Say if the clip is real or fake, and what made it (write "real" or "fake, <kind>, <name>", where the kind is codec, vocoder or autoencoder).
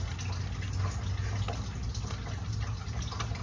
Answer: real